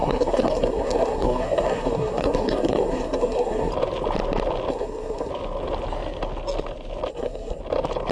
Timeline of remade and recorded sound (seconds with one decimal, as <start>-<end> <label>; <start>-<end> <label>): 0.0-3.7 remade; 3.7-4.7 recorded; 4.7-5.3 remade; 5.3-7.1 recorded; 7.1-7.6 remade; 7.6-8.1 recorded